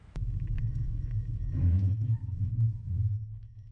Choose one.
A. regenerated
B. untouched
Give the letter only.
A